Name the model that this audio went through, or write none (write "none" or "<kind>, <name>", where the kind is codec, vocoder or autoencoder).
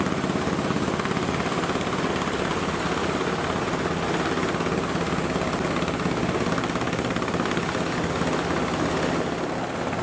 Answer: none